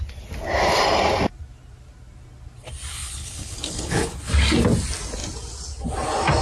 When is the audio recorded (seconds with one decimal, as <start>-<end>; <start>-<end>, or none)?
0.0-2.9; 4.3-6.4